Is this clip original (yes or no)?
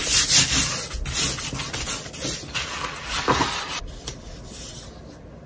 no